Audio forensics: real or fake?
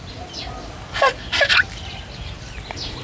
real